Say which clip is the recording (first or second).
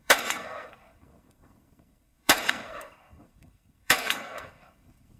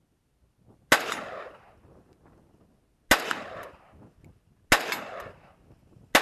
second